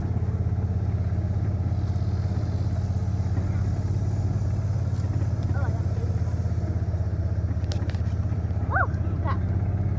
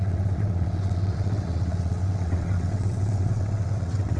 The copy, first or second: second